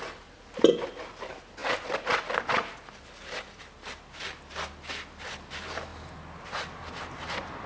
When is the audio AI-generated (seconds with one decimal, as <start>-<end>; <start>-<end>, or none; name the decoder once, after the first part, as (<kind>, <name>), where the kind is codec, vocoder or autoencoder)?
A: none